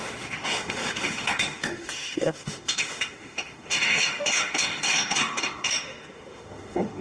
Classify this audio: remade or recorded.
remade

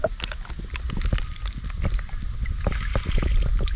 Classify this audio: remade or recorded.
recorded